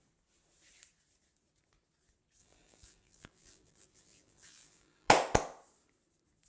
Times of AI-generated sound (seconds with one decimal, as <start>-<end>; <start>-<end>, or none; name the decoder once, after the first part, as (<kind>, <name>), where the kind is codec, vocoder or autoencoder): 2.4-5.1 (vocoder, BigVGAN v2)